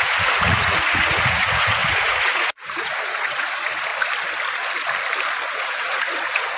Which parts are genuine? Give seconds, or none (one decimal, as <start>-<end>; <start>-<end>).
3.9-5.5